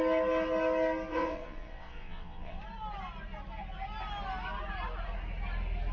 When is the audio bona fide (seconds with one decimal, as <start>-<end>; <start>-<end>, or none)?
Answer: 0.0-1.1; 2.6-5.9